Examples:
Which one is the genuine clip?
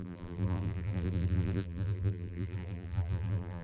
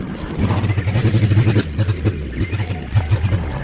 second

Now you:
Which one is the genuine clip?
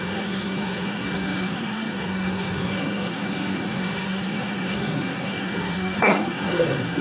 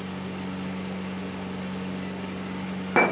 second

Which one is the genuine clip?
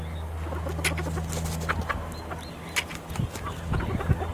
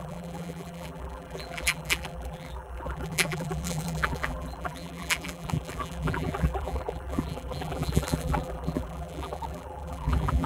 first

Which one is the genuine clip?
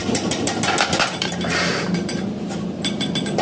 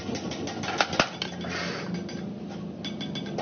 second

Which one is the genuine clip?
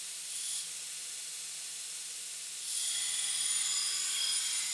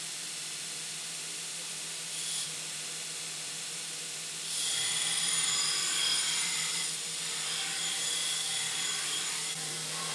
first